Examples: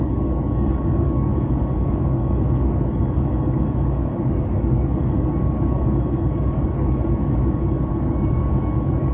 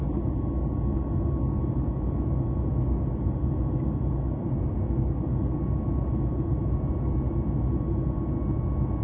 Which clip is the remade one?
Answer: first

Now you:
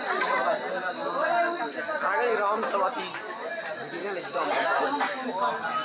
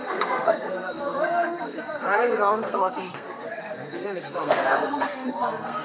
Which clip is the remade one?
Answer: second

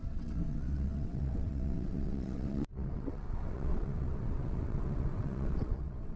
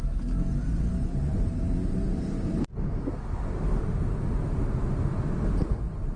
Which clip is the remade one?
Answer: first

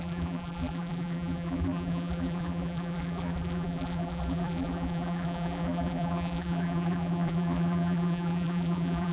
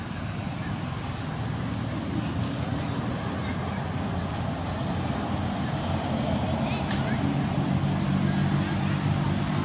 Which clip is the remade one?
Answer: first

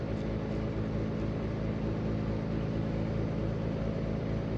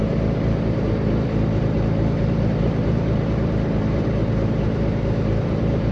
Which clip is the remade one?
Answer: second